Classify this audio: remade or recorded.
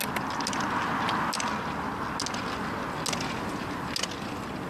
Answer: recorded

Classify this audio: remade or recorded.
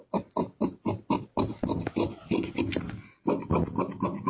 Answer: recorded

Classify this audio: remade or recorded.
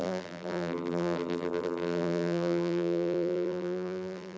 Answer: remade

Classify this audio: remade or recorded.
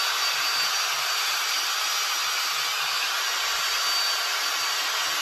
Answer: recorded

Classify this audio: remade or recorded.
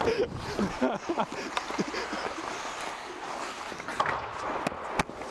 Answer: recorded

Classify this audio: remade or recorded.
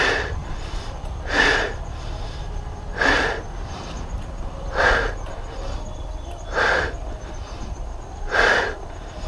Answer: remade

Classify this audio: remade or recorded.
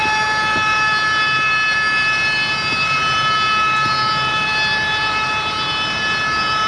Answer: remade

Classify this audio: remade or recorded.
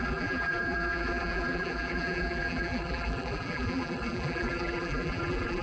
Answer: remade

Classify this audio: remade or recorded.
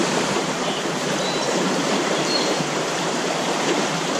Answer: remade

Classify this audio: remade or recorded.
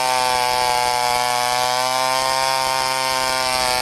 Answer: recorded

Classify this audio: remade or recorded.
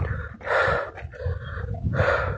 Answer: recorded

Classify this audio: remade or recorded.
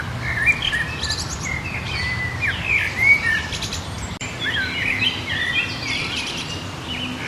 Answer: recorded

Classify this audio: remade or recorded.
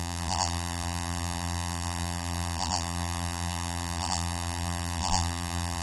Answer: remade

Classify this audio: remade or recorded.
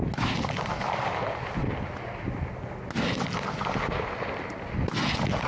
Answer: recorded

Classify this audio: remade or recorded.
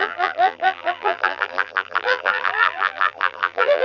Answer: remade